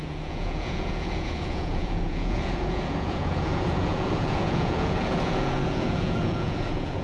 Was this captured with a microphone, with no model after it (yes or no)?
no